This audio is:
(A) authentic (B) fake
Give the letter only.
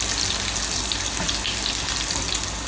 A